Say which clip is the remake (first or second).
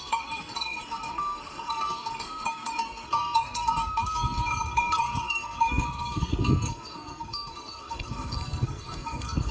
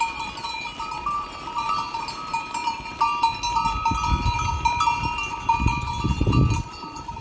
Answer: first